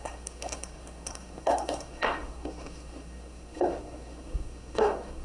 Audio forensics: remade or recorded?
remade